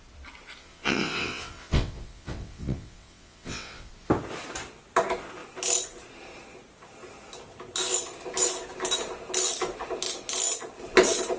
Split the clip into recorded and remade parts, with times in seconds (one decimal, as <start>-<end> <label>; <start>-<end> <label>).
0.0-0.6 recorded; 0.6-3.9 remade; 3.9-11.4 recorded